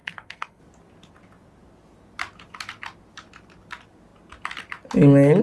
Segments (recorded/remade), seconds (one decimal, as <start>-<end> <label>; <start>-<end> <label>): 0.0-0.6 remade; 0.6-5.4 recorded